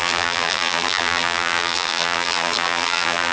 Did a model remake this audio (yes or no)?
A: yes